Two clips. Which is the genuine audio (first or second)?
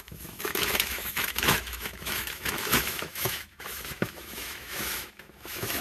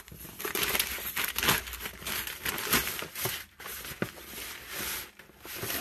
second